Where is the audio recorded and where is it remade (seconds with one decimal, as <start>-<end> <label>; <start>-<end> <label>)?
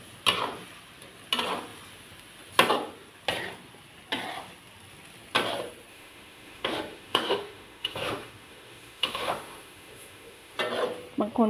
0.0-5.9 recorded; 5.9-10.6 remade; 10.6-11.5 recorded